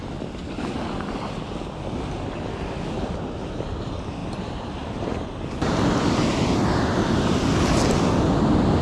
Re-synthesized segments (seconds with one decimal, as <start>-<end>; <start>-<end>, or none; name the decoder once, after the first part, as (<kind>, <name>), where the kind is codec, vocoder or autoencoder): none